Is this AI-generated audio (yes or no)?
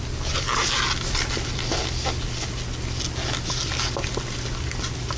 no